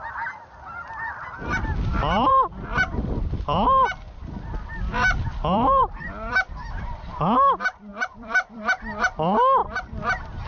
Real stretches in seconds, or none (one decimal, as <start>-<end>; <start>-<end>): 0.0-1.9; 7.0-7.9; 8.6-9.6